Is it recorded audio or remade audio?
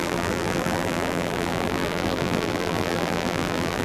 remade